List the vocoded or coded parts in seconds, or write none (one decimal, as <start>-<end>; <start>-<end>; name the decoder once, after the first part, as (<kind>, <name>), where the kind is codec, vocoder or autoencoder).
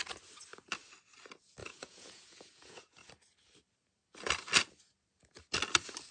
1.6-3.1 (vocoder, Vocos)